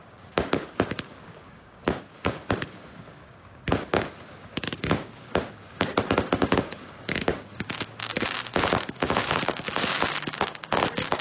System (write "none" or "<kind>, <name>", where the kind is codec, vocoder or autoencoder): codec, DAC